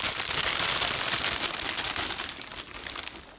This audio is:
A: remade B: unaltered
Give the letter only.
B